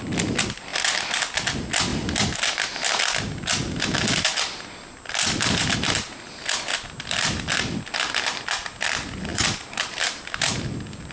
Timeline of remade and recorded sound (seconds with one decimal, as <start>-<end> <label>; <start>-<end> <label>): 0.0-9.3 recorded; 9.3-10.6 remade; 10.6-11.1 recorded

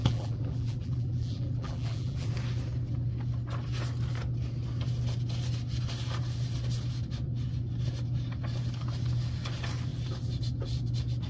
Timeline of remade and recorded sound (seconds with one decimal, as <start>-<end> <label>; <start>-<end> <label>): 0.0-2.3 remade; 2.3-11.3 recorded

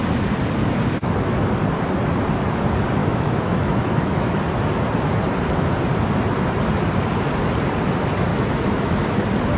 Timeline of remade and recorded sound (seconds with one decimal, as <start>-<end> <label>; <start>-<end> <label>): 0.0-3.0 recorded; 3.0-4.4 remade; 4.4-8.3 recorded; 8.3-9.2 remade; 9.2-9.6 recorded